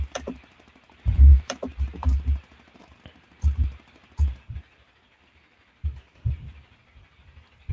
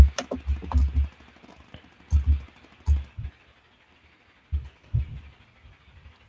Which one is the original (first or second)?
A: second